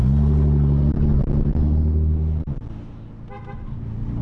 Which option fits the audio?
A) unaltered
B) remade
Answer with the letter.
A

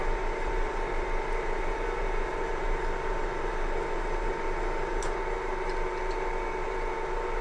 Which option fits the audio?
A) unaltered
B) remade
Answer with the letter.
B